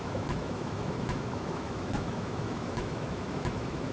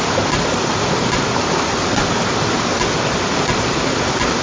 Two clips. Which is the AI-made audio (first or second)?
first